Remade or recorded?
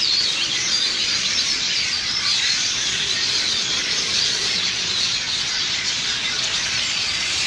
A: remade